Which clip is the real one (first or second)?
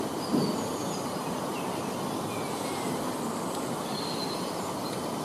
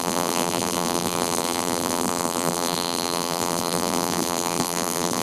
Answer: first